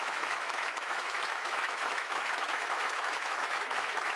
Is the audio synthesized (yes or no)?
yes